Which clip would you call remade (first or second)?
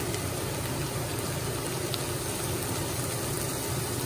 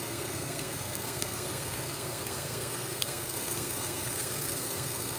second